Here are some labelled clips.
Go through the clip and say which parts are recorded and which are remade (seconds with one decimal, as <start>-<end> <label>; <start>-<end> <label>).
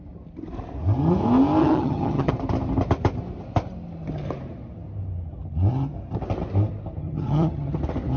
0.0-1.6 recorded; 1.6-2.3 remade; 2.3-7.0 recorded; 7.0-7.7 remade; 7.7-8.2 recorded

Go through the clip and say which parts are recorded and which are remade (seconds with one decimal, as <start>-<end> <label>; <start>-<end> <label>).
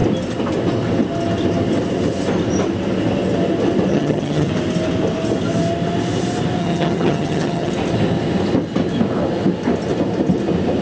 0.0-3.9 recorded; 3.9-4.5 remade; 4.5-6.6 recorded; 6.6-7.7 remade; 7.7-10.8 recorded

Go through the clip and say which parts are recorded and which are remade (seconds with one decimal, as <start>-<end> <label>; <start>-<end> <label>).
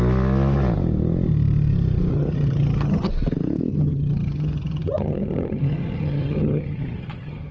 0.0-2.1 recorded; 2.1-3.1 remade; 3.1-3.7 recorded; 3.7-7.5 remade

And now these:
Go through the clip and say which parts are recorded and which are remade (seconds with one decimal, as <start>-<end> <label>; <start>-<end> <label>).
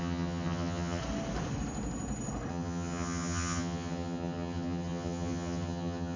0.0-1.0 remade; 1.0-2.5 recorded; 2.5-6.2 remade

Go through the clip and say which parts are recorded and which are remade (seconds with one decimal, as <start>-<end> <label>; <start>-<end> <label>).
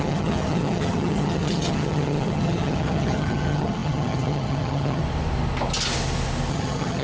0.0-5.0 remade; 5.0-6.5 recorded; 6.5-7.0 remade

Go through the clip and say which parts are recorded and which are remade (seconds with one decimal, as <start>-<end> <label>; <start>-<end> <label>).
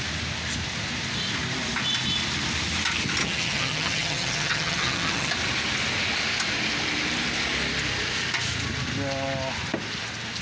0.0-3.2 recorded; 3.2-5.3 remade; 5.3-10.4 recorded